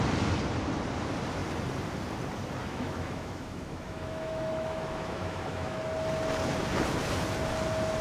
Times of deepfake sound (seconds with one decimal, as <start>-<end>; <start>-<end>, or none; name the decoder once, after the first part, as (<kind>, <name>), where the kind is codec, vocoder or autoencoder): 2.6-5.8 (autoencoder, DAC-VAE)